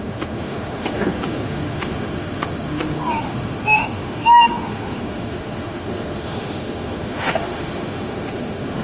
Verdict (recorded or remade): remade